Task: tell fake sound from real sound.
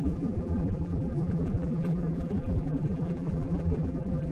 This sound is fake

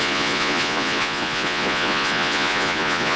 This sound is fake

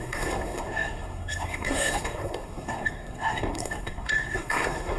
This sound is fake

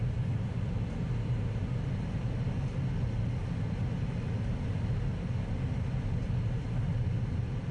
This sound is real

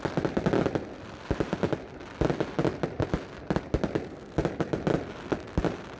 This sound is real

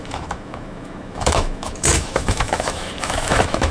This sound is fake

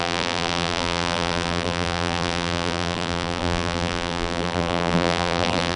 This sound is fake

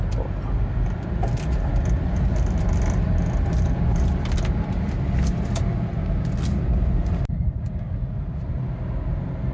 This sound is real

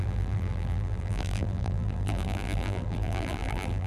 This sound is fake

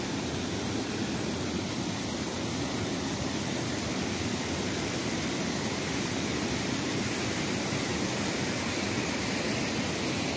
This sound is real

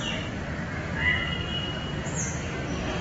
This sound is real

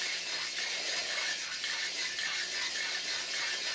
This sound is real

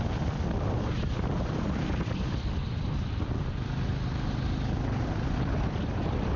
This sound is real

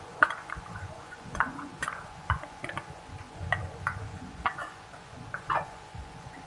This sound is fake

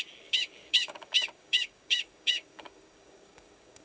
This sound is fake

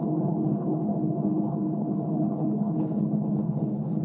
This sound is fake